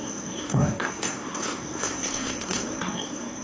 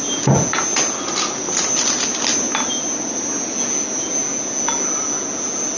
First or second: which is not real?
first